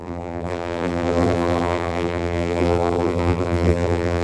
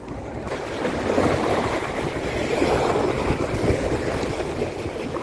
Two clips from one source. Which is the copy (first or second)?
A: first